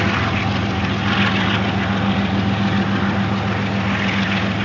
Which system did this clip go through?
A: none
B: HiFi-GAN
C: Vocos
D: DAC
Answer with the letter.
A